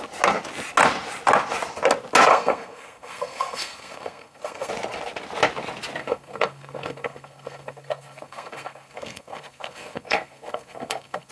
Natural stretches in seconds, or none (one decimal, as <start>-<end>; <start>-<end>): 0.0-2.3; 4.7-6.0